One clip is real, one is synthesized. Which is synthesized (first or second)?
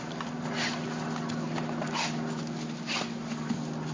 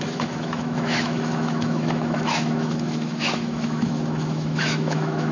second